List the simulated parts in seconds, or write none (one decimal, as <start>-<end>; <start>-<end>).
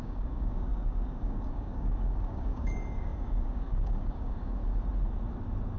0.0-4.6